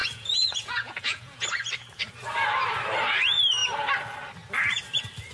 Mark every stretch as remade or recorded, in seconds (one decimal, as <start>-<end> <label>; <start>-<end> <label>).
0.0-1.4 remade; 1.4-5.3 recorded